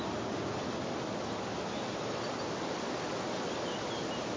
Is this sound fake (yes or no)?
no